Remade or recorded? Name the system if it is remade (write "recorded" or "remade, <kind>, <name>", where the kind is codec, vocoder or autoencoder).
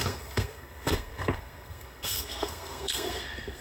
remade, codec, SNAC